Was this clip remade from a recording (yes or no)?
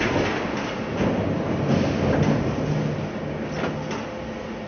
no